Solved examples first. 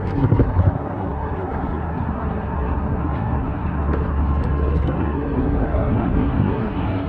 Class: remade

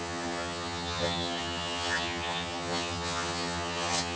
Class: remade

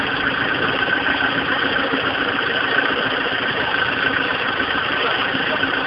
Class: remade